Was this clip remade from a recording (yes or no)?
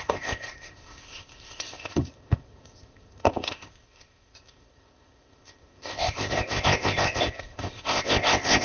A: yes